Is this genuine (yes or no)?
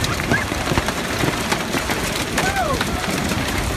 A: no